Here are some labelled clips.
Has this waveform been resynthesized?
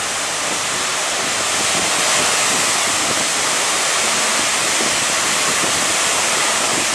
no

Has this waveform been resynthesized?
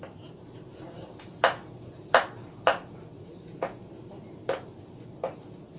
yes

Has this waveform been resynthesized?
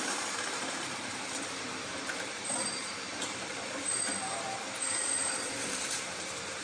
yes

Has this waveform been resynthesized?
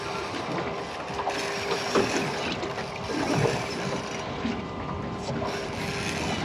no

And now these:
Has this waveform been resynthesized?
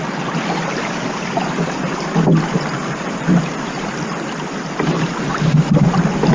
yes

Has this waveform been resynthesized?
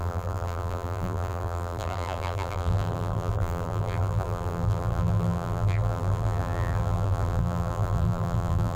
yes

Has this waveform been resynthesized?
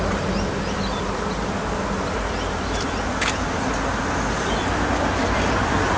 no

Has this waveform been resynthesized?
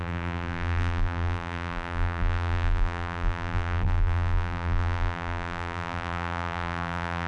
yes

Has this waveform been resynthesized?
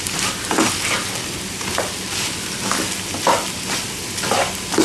no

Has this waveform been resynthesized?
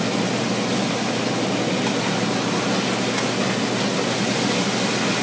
no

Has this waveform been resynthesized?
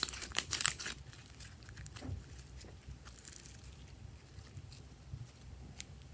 yes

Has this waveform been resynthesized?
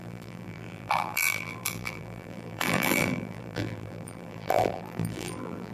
yes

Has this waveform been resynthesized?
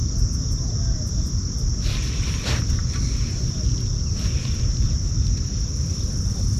no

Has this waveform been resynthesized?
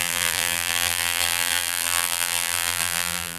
yes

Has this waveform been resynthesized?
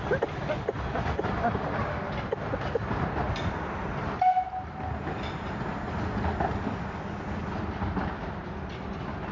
no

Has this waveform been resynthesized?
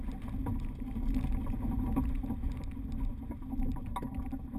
no